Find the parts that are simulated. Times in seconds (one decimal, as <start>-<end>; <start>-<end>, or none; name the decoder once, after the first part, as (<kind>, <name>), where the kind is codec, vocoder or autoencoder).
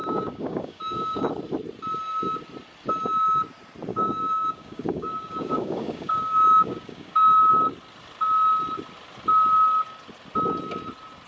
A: 0.0-1.2 (codec, DAC); 3.9-7.5